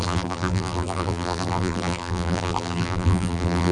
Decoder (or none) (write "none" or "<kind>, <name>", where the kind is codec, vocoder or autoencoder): vocoder, BigVGAN v2